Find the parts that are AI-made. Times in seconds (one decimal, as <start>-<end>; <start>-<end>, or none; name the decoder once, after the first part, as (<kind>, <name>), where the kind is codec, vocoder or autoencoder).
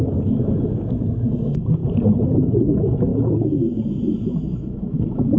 0.0-1.8 (autoencoder, DAC-VAE); 2.6-3.1; 4.2-5.4